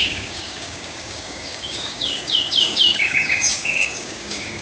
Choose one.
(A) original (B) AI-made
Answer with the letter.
B